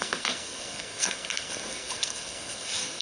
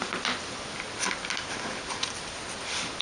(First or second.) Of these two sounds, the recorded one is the second